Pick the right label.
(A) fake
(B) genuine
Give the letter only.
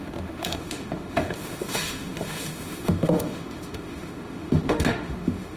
A